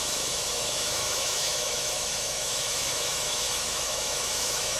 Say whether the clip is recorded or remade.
remade